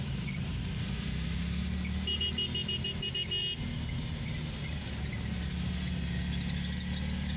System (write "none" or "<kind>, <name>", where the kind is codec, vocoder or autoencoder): none